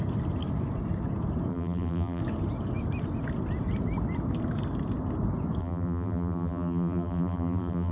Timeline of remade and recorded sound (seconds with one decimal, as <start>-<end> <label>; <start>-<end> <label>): 0.0-1.5 recorded; 1.5-2.2 remade; 2.2-5.6 recorded; 5.6-7.9 remade